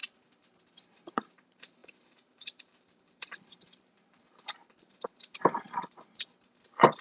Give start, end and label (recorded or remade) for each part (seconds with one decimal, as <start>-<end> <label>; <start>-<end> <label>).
0.0-7.0 remade